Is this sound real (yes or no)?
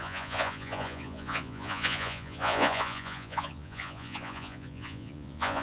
no